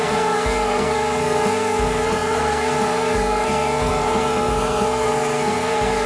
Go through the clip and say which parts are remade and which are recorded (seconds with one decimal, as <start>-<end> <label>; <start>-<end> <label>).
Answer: 0.0-6.1 remade

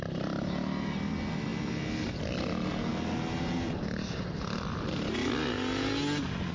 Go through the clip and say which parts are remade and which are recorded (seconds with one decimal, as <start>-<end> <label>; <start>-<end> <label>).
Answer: 0.0-6.5 recorded

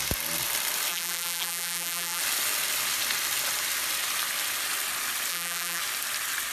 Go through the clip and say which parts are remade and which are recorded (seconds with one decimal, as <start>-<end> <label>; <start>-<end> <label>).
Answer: 0.0-0.9 recorded; 0.9-2.2 remade; 2.2-5.3 recorded; 5.3-5.8 remade; 5.8-6.5 recorded

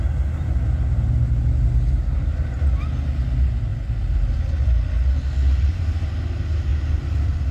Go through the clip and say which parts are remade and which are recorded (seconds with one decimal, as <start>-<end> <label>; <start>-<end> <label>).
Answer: 0.0-7.5 recorded

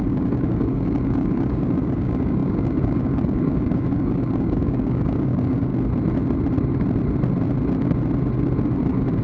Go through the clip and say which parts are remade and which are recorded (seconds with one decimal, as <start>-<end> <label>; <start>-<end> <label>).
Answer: 0.0-5.7 remade; 5.7-9.2 recorded

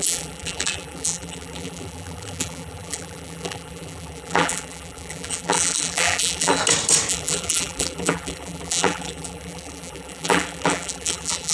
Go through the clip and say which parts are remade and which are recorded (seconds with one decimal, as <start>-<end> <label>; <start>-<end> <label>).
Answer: 0.0-6.6 remade; 6.6-7.1 recorded; 7.1-11.5 remade

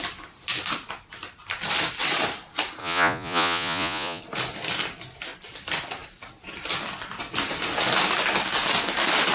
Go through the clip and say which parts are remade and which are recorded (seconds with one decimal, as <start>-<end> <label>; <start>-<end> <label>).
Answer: 0.0-2.8 recorded; 2.8-4.2 remade; 4.2-9.3 recorded

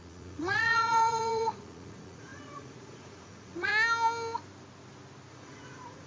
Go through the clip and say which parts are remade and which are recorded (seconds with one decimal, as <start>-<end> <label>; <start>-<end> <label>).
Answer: 0.0-3.7 remade; 3.7-5.3 recorded; 5.3-6.1 remade